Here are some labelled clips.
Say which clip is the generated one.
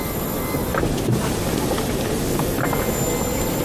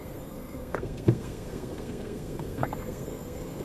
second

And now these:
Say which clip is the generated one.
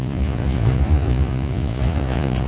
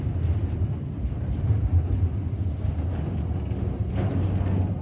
first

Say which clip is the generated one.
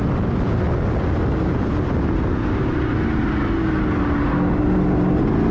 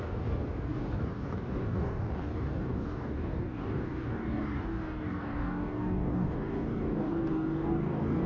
second